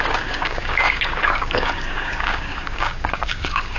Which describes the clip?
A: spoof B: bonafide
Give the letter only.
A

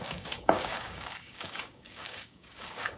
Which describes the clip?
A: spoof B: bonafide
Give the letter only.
A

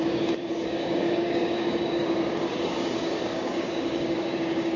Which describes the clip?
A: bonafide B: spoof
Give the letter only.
B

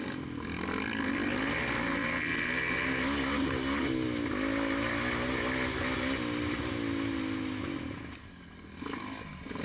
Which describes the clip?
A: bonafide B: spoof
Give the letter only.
A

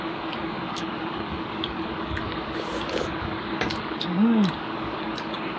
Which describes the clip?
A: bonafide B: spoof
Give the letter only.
B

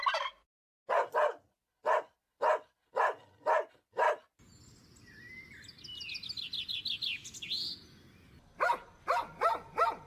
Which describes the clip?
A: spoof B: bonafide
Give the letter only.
B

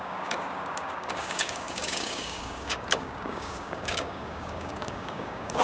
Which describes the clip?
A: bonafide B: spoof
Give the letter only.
B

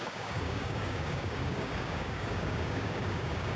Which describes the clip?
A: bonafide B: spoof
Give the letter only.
B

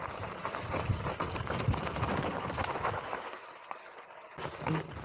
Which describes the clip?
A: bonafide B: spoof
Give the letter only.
A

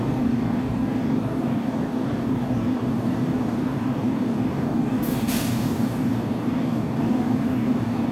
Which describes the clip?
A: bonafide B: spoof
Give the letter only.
B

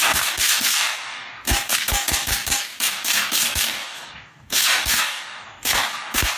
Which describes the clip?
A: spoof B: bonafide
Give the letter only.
A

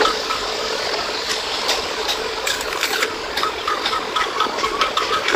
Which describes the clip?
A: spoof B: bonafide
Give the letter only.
A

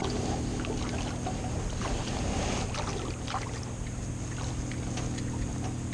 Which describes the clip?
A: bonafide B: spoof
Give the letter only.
A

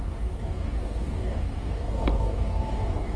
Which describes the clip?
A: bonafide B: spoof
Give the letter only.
B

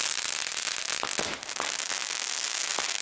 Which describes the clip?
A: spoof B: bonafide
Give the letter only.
B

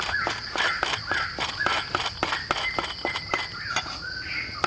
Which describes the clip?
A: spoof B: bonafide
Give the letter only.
B